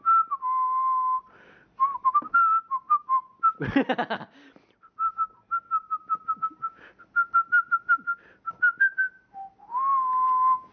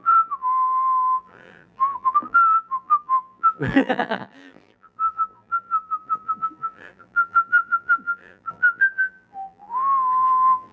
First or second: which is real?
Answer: first